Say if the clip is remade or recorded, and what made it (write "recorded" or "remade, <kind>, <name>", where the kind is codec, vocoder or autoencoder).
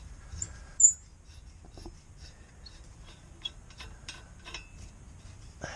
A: recorded